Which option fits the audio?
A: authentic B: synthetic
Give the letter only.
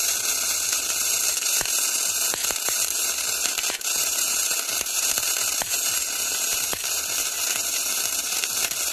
B